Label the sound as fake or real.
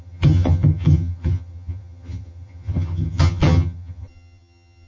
fake